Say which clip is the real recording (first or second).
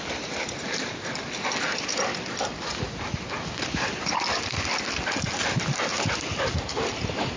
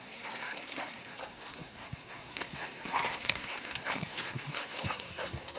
first